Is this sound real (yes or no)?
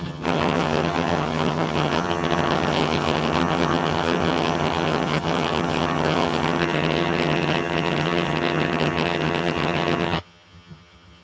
no